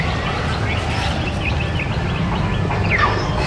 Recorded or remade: recorded